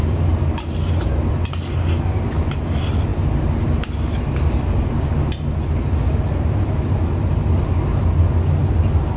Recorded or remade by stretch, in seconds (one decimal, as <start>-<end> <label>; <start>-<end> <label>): 0.0-9.2 recorded